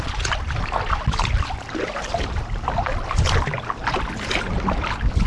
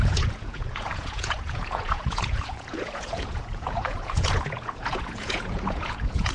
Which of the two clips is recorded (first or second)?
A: first